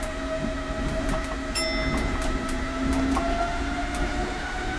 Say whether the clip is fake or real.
real